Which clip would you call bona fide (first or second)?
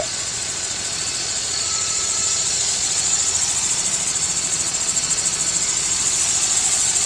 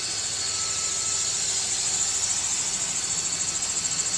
second